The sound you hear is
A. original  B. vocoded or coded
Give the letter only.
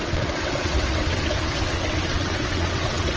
B